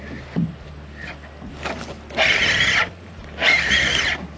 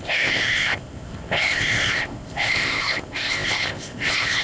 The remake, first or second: second